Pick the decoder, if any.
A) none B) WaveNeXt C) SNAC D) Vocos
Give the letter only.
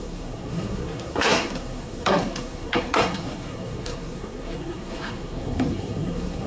C